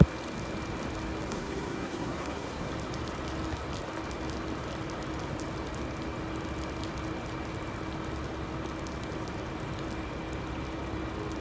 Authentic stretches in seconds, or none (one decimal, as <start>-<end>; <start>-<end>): 0.0-1.3; 2.7-11.4